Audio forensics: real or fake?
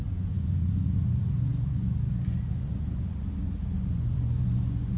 fake